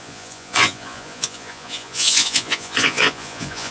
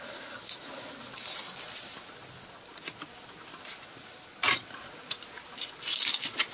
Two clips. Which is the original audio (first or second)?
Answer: second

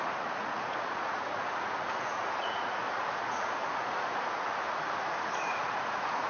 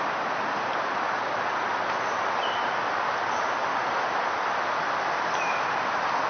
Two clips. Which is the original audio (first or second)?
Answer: second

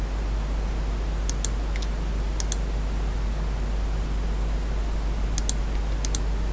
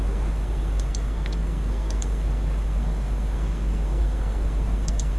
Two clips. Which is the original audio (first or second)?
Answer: first